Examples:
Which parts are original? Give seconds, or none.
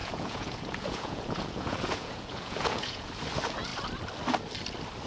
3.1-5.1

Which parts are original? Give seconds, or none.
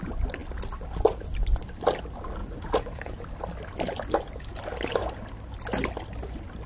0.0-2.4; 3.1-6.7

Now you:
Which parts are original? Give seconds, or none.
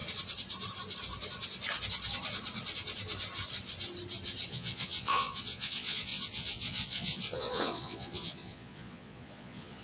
0.0-4.5